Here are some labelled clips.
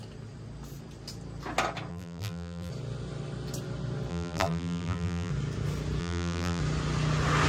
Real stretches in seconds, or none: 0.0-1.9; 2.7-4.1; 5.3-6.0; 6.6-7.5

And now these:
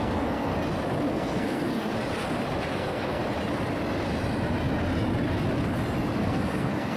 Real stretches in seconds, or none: 0.5-1.1; 1.9-2.7; 3.2-6.2

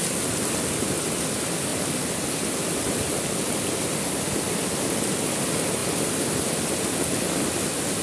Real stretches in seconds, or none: 0.7-1.7; 4.5-8.0

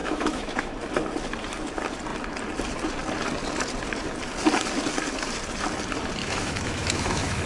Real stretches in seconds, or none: 0.8-6.2

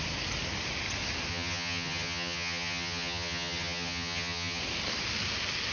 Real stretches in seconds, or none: 0.0-1.3; 4.6-5.7

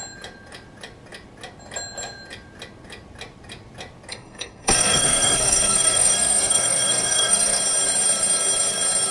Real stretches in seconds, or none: 0.0-4.1; 7.6-9.1